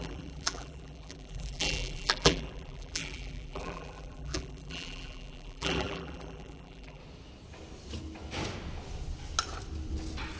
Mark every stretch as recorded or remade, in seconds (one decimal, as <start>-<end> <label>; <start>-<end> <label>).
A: 0.0-7.0 remade; 7.0-10.4 recorded